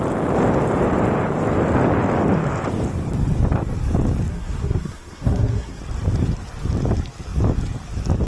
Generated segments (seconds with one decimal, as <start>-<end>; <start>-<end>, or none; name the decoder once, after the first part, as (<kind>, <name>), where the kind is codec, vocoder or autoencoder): 4.3-5.8 (codec, SNAC)